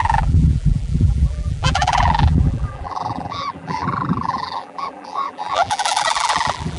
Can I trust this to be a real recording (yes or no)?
no